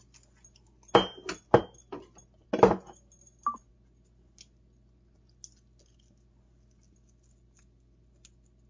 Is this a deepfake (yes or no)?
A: no